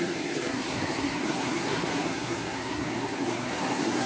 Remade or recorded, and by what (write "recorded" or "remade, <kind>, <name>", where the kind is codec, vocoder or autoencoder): remade, codec, SNAC